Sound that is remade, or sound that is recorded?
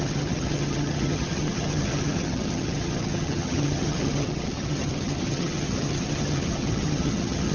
remade